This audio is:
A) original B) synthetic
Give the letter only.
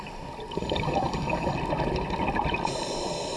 A